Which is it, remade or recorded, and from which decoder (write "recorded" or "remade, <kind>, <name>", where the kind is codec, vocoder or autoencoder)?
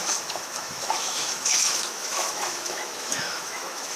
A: remade, autoencoder, DAC-VAE